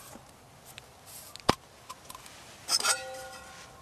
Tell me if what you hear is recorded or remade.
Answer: recorded